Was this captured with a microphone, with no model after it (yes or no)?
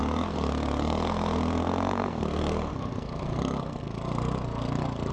no